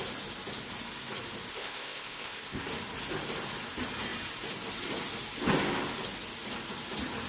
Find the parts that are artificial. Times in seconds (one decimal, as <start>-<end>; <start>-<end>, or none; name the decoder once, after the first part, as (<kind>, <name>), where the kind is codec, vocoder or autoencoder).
1.5-2.6 (codec, ZipCodec)